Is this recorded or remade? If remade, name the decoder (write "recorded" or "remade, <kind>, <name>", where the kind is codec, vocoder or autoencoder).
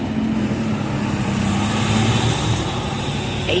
recorded